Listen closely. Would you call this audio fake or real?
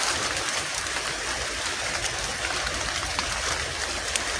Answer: fake